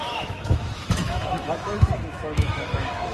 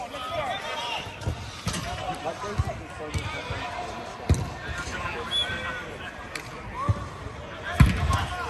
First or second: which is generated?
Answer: first